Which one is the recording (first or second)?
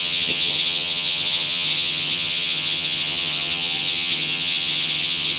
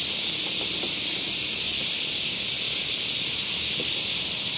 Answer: second